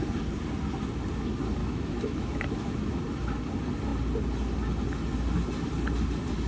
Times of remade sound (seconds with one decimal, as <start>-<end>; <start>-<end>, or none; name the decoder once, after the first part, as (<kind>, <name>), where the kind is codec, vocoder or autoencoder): 1.6-3.0 (autoencoder, DAC-VAE)